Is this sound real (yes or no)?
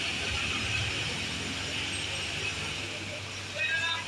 yes